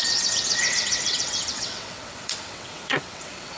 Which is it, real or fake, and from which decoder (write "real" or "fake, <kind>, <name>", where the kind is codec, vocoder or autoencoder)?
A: fake, vocoder, WaveNeXt